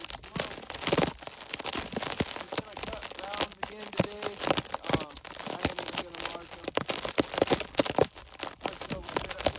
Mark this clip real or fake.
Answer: real